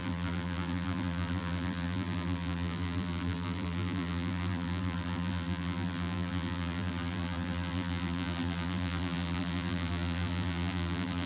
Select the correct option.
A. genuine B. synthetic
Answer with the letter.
B